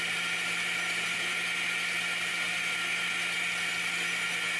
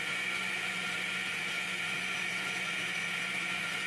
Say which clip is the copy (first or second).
second